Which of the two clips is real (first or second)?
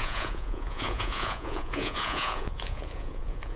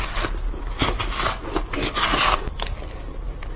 second